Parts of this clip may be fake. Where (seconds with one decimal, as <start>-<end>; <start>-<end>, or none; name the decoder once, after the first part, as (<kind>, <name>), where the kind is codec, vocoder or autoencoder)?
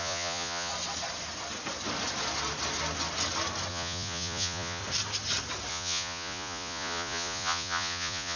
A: 0.0-0.7 (vocoder, Vocos); 3.7-4.8; 5.7-8.4